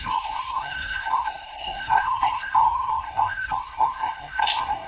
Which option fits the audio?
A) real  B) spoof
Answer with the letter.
B